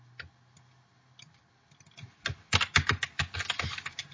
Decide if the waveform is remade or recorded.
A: recorded